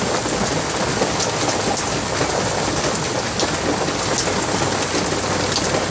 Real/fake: real